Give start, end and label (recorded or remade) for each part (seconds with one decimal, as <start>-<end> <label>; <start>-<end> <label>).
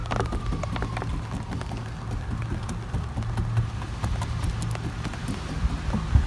0.0-6.3 recorded